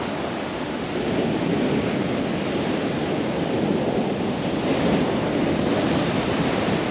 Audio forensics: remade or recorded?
recorded